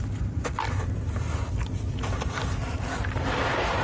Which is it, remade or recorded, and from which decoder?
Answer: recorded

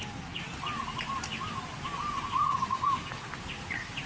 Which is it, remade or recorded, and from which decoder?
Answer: recorded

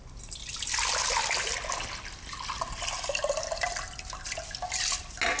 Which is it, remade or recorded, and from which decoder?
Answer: recorded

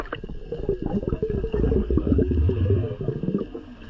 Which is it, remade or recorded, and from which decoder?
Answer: remade, codec, DAC